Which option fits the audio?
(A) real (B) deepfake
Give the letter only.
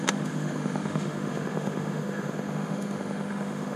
B